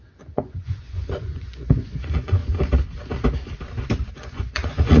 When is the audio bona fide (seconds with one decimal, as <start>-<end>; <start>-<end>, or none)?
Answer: 2.4-4.1